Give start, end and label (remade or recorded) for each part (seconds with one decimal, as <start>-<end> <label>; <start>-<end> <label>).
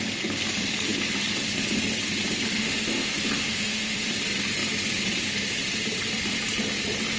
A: 0.0-2.6 recorded; 2.6-4.1 remade; 4.1-7.2 recorded